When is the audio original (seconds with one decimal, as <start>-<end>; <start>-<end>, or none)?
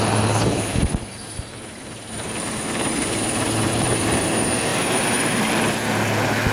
0.0-0.4; 4.3-4.7; 5.5-6.5